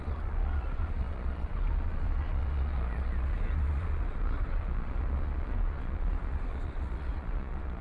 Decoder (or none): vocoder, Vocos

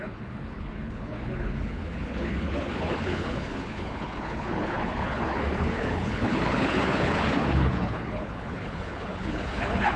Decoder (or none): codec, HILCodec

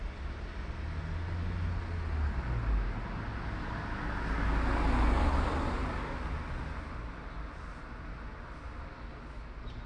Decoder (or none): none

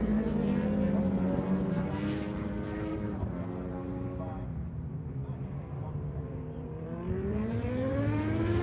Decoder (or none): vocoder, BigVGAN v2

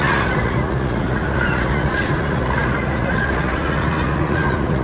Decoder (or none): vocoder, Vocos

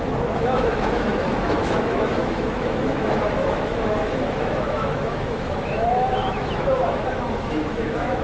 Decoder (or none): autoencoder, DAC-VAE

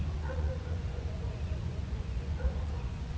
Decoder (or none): vocoder, Vocos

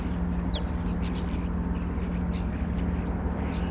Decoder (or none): none